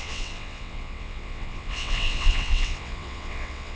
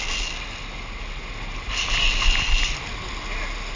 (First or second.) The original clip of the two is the second